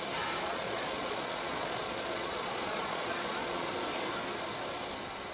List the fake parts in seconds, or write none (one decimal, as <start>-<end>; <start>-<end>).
0.5-3.7